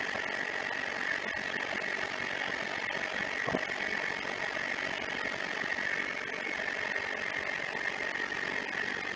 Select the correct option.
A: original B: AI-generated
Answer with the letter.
A